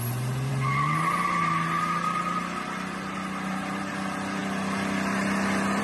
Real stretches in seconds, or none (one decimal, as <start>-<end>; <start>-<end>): 0.0-5.8